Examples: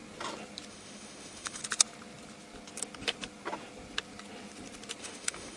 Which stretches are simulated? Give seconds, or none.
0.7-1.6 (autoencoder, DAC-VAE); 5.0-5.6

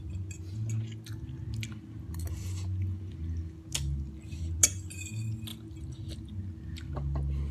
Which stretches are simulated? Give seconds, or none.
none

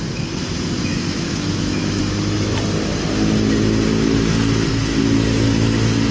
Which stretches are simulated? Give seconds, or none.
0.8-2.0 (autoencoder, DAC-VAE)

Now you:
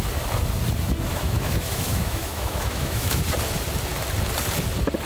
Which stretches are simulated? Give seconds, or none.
1.1-3.2 (autoencoder, DAC-VAE)